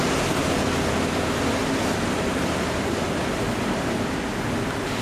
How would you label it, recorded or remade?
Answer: recorded